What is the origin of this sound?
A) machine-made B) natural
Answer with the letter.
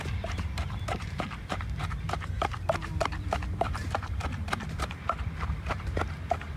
A